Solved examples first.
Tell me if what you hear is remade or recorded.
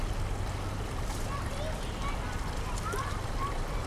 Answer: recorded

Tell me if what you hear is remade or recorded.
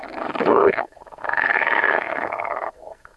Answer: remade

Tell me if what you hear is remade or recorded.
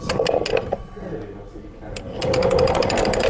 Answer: recorded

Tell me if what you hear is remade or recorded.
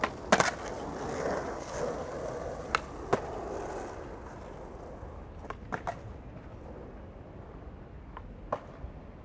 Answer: recorded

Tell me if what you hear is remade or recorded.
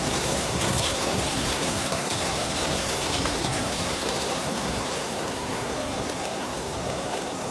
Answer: remade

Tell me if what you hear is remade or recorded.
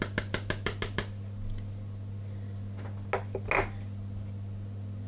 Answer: recorded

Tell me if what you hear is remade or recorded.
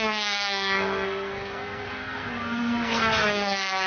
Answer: remade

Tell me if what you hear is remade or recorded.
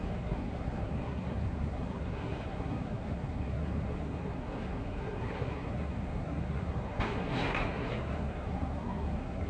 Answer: remade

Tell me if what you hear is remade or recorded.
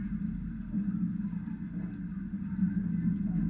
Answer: recorded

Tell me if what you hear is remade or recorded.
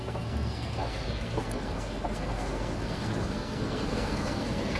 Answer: remade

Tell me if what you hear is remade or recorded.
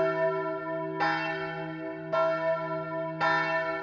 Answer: recorded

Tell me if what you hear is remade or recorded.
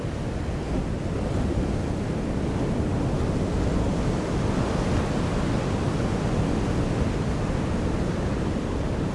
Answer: recorded